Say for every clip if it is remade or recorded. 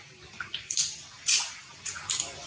recorded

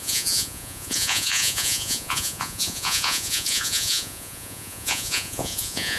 remade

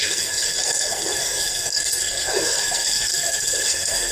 remade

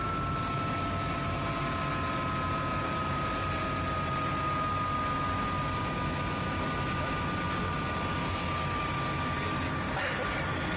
recorded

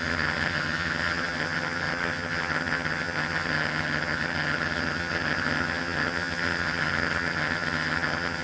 remade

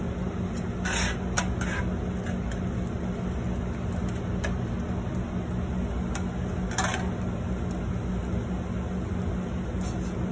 recorded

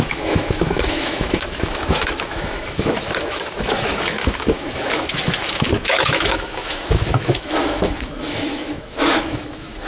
remade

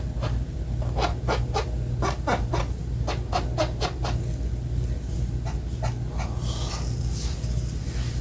recorded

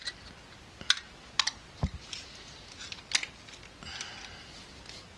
recorded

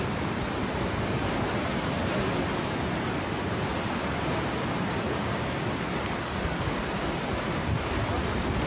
recorded